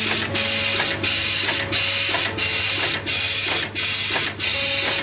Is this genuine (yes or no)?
yes